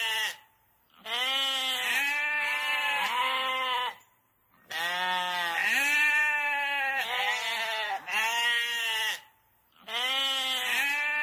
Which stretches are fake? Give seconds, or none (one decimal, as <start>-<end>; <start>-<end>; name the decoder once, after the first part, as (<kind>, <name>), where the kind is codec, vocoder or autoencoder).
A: none